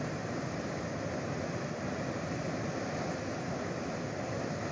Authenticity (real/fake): real